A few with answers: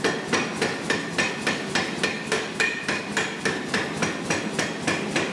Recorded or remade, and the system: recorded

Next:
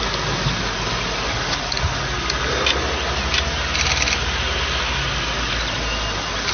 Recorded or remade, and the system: recorded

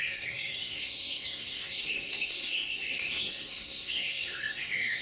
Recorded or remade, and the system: remade, codec, SNAC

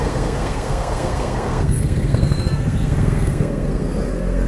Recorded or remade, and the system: remade, codec, SNAC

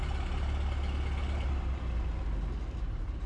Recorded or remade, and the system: recorded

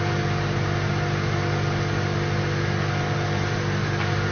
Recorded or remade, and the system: recorded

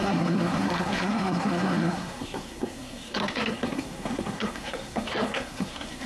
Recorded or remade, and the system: remade, codec, SNAC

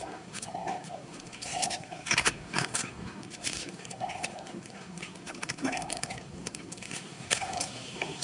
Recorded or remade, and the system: remade, codec, SNAC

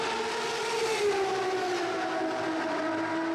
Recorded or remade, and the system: recorded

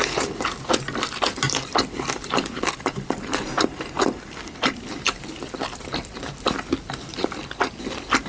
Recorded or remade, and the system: recorded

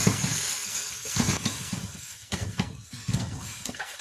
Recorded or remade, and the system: remade, codec, SNAC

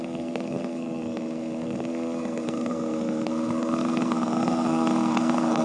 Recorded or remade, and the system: remade, codec, SNAC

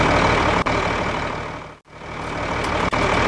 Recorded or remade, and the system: recorded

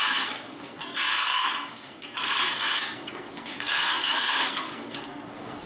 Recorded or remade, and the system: remade, codec, SNAC